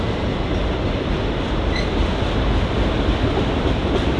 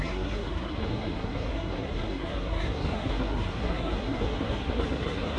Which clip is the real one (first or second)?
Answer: first